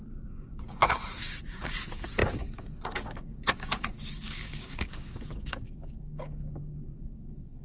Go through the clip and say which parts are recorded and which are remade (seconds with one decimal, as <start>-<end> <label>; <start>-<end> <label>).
0.0-7.6 remade